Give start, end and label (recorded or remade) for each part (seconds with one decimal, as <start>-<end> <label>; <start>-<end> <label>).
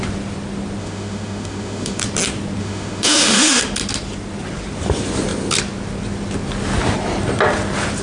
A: 0.0-0.8 recorded; 0.8-2.0 remade; 2.0-2.6 recorded; 2.6-3.6 remade; 3.6-8.0 recorded